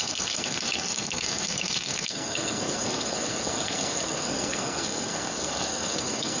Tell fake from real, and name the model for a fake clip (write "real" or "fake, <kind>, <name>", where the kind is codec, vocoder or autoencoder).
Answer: fake, codec, SNAC